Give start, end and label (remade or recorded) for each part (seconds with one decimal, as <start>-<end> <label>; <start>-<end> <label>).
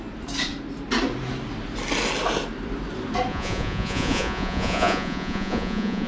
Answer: 0.0-3.3 recorded; 3.3-6.1 remade